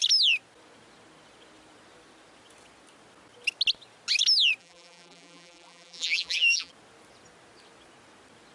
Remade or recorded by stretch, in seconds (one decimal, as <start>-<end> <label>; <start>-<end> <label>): 0.0-4.6 recorded; 4.6-6.7 remade; 6.7-8.5 recorded